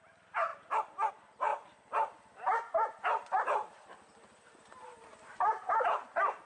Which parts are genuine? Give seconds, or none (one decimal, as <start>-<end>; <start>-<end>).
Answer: 0.5-1.1; 1.5-5.1